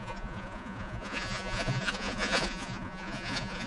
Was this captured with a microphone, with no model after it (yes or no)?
no